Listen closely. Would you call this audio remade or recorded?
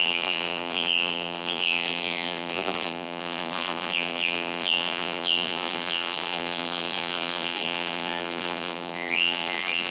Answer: remade